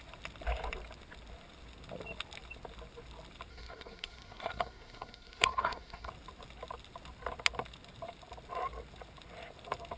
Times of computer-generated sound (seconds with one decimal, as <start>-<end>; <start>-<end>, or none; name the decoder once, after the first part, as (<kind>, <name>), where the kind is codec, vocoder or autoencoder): 3.5-6.1 (codec, SNAC)